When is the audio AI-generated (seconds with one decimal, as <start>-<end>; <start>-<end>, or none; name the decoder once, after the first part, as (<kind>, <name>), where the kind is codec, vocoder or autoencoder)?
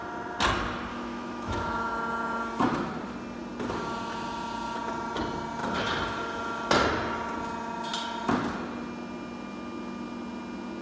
0.9-1.9 (autoencoder, DAC-VAE)